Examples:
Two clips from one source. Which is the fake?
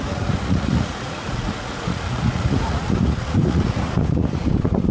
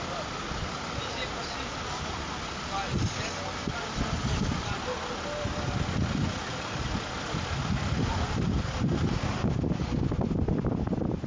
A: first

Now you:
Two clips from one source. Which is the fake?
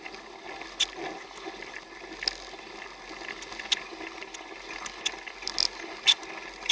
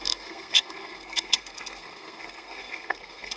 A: second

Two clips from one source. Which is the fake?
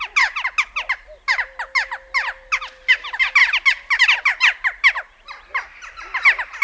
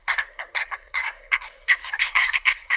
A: second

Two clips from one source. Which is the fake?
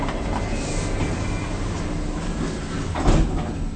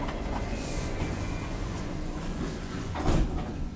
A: second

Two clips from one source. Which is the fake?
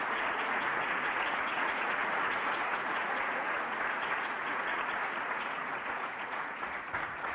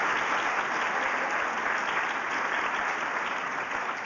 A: first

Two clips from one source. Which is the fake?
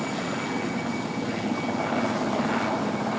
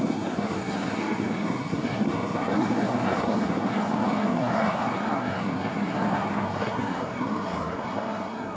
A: second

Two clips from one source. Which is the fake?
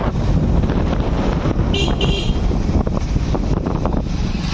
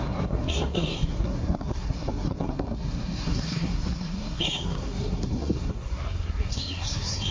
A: second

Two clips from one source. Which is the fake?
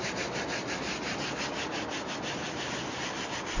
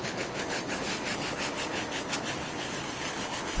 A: second